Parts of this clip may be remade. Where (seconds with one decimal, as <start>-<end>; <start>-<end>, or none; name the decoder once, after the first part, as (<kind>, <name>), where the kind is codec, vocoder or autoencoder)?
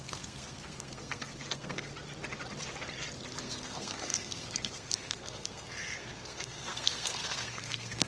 0.0-1.9 (codec, SNAC); 3.4-8.1